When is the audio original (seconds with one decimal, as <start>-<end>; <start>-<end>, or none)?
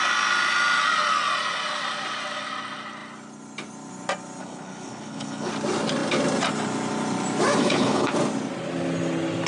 0.0-4.4; 5.5-7.6; 8.1-9.5